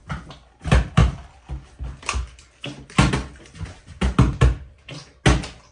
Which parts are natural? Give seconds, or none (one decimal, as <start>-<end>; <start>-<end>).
0.0-5.7